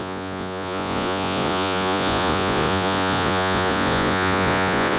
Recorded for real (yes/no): no